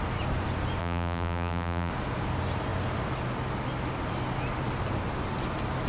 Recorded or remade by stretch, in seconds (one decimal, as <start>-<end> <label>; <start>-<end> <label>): 0.0-0.8 recorded; 0.8-1.9 remade; 1.9-5.9 recorded